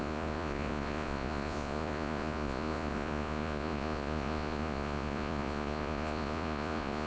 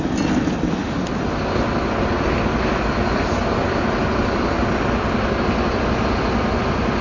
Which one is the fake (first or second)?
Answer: first